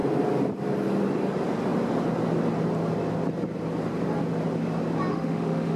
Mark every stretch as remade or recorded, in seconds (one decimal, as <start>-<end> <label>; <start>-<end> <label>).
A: 0.0-5.1 recorded; 5.1-5.8 remade